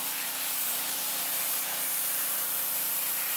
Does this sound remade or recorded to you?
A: remade